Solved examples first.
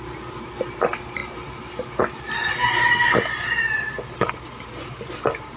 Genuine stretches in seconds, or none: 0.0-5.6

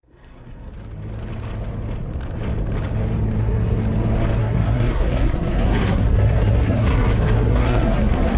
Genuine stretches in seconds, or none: 0.7-3.4; 3.8-4.4

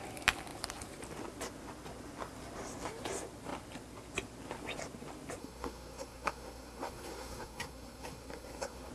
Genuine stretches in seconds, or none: 0.0-5.4

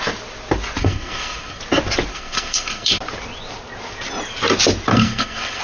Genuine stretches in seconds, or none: 0.0-0.8; 1.6-2.1; 3.0-4.9

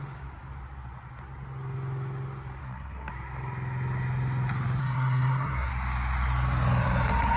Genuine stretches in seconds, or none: 0.0-2.6; 3.1-4.8; 5.7-7.4